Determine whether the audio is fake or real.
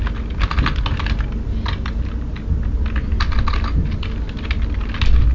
real